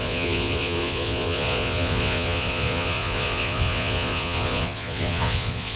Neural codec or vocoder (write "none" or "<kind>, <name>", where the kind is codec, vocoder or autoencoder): vocoder, Vocos